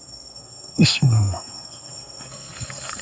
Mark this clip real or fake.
fake